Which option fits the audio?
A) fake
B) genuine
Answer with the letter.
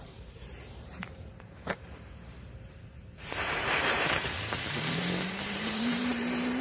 A